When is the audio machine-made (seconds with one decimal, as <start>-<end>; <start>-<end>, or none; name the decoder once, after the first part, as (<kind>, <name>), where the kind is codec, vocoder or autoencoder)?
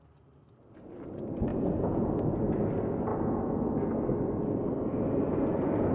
1.5-2.0 (vocoder, Vocos)